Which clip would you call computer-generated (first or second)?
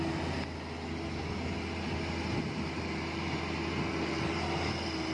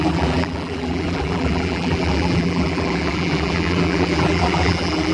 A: second